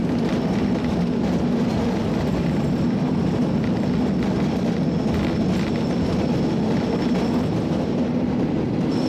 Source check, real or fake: real